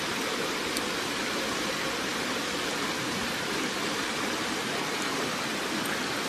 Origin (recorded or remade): recorded